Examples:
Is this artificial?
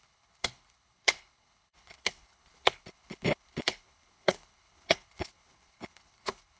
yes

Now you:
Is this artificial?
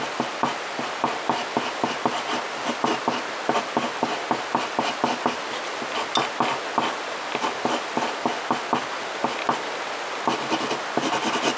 no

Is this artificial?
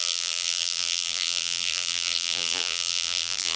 yes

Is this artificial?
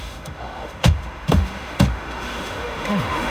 yes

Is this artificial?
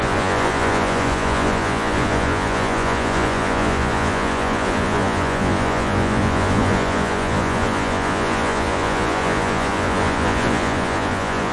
yes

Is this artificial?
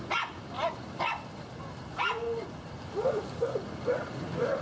no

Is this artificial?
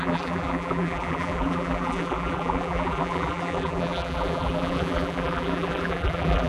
yes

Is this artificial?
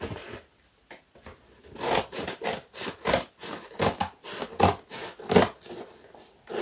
no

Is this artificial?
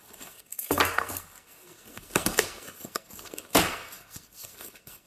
yes